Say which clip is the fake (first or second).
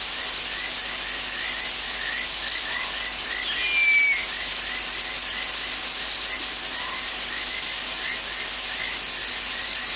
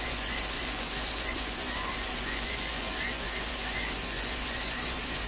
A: second